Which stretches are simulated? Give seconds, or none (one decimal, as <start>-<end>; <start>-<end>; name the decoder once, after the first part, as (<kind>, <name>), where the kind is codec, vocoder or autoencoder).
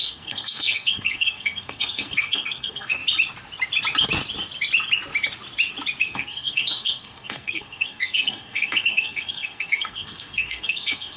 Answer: 0.0-3.0 (codec, SNAC); 6.0-11.2